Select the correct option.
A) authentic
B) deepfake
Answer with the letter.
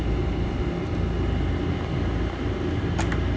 A